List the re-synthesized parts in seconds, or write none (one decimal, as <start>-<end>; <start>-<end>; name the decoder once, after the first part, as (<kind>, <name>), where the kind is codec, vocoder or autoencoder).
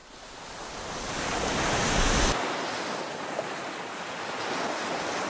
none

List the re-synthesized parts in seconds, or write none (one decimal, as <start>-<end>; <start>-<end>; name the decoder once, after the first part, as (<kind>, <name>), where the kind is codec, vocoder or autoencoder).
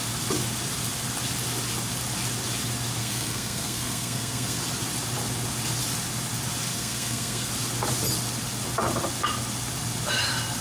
3.0-4.6 (codec, SNAC); 6.7-7.5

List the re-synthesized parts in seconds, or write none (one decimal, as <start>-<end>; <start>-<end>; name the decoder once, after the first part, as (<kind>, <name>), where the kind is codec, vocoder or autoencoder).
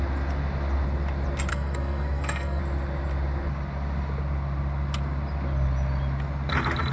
1.5-2.6 (codec, SNAC)